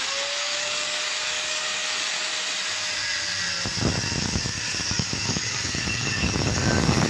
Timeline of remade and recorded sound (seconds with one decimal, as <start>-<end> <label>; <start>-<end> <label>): 0.0-2.3 remade; 2.3-4.2 recorded; 4.2-7.1 remade